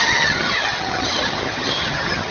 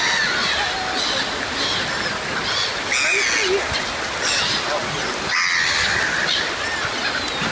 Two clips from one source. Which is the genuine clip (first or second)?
second